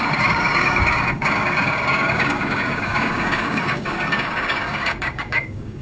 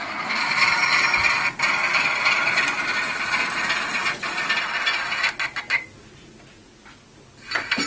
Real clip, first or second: second